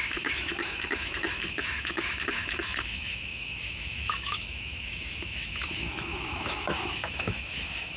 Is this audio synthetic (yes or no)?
yes